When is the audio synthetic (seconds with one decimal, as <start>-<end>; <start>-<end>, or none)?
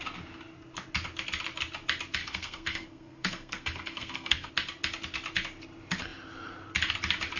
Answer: 2.2-4.5